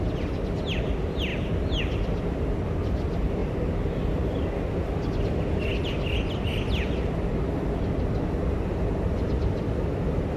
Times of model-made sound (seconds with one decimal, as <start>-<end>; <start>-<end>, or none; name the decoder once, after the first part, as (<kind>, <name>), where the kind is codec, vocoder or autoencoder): 0.0-1.3 (vocoder, BigVGAN v2); 1.8-3.4; 4.8-5.7; 9.2-10.4